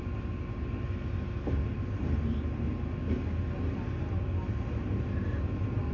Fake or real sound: real